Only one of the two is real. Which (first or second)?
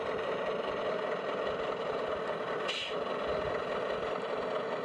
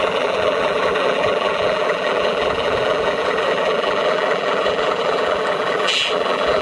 first